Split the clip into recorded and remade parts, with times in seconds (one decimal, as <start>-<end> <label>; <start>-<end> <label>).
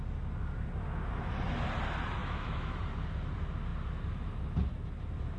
0.0-2.2 recorded; 2.2-2.8 remade; 2.8-5.4 recorded